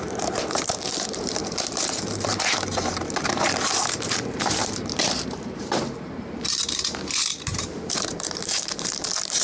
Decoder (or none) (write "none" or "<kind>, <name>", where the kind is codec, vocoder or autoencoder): vocoder, BigVGAN v2